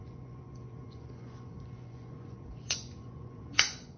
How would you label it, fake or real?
fake